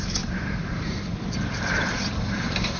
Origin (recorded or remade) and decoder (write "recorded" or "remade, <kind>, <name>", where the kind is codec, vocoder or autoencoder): remade, vocoder, BigVGAN v2